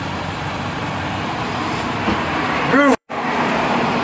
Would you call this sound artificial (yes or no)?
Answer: yes